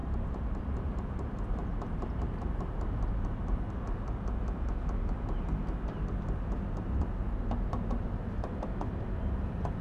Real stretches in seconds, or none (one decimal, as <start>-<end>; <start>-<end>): 3.7-9.8